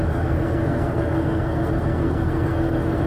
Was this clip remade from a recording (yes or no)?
yes